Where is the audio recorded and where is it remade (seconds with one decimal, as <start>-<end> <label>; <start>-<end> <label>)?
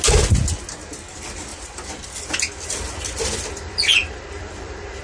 0.0-1.5 recorded; 1.5-3.6 remade; 3.6-4.0 recorded; 4.0-5.0 remade